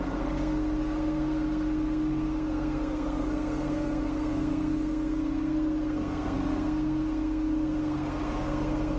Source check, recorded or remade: remade